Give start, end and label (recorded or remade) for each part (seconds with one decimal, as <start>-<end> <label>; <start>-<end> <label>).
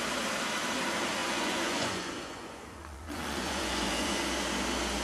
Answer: 0.0-1.2 recorded; 1.2-4.2 remade; 4.2-5.0 recorded